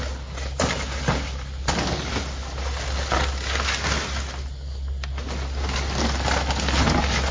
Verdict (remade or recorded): recorded